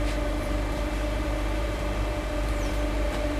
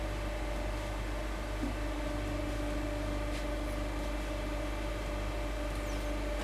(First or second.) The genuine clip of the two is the second